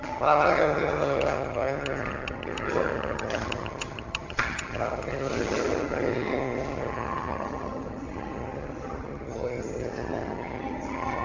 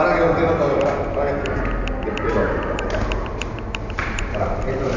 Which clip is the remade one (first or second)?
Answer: first